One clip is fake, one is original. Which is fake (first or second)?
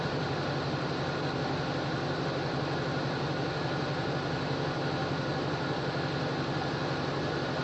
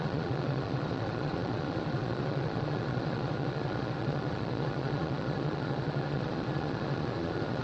second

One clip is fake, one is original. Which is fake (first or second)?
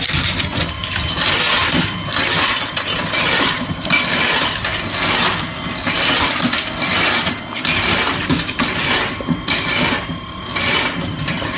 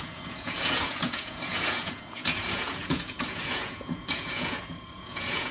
second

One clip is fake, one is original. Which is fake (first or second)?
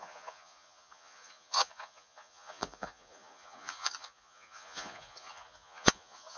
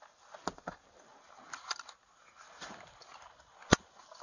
first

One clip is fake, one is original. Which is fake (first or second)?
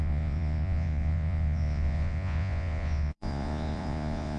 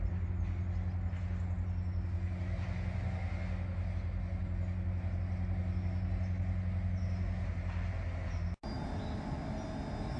first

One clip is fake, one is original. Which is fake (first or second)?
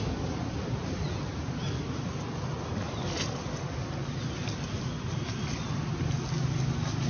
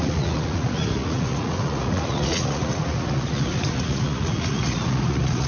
second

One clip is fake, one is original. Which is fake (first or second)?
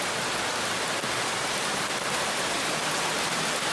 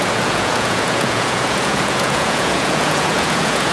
second